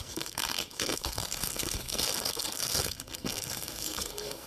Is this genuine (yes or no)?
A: no